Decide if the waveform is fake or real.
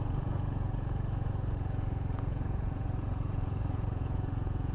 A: fake